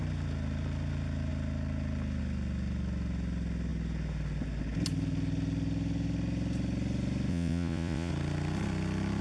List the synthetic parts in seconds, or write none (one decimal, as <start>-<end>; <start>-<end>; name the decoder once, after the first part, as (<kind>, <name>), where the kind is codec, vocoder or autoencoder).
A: 7.3-8.1 (vocoder, Vocos)